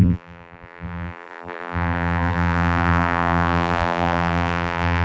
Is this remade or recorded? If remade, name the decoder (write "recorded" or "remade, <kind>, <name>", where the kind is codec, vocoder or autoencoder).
remade, vocoder, BigVGAN v2